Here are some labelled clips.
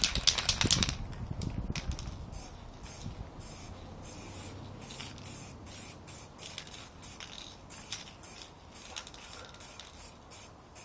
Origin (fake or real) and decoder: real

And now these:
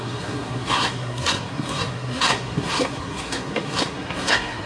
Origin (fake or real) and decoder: fake, codec, SNAC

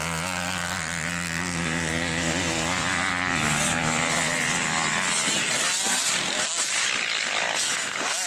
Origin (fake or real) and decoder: real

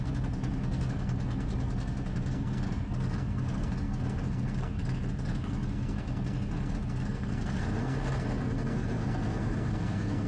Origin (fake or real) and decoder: fake, codec, SNAC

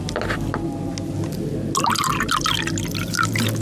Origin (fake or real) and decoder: real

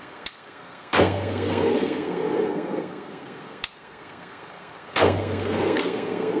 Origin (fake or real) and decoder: fake, codec, SNAC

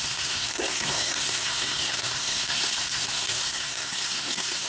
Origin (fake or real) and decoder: fake, codec, SNAC